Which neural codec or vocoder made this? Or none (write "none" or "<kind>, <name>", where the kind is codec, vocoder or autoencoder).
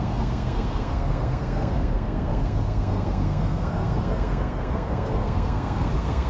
codec, SNAC